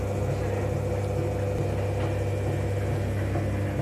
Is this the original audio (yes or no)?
yes